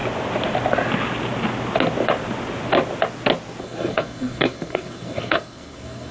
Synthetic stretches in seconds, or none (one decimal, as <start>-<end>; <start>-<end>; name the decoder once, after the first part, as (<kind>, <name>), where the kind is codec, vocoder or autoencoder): 3.6-6.1 (codec, SNAC)

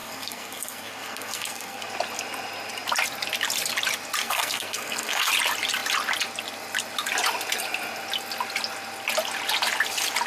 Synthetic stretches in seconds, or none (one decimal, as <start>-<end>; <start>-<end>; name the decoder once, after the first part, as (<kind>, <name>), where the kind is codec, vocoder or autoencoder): 0.0-1.8 (codec, SNAC); 4.2-5.3

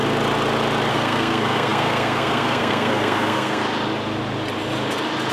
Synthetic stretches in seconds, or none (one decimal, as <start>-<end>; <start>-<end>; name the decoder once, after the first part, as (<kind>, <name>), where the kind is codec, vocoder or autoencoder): 0.9-3.6 (codec, SNAC)

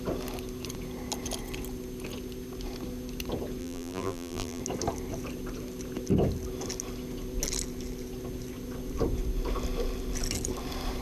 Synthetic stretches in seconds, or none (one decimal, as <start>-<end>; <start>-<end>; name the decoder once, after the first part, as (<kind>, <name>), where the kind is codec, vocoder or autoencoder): 3.6-4.6 (vocoder, BigVGAN v2)